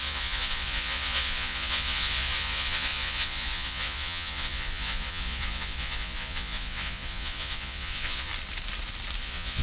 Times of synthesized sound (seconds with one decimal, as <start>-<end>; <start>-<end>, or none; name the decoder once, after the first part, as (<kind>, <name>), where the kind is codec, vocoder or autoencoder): 0.0-8.3 (vocoder, Vocos); 9.2-9.6